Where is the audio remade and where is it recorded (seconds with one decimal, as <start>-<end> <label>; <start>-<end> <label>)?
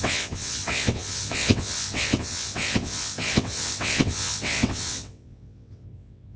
0.0-6.4 remade